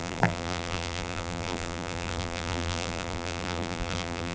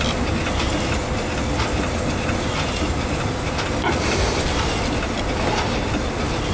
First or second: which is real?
second